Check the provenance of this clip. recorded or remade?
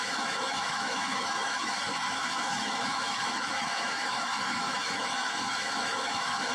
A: remade